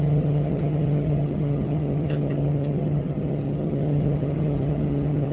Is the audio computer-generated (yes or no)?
yes